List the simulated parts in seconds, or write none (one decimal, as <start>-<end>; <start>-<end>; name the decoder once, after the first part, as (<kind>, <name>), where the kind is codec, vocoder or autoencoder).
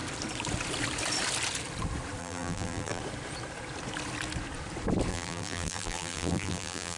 2.2-3.0 (vocoder, BigVGAN v2); 5.1-7.0